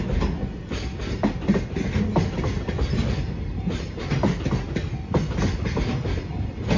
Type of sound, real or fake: real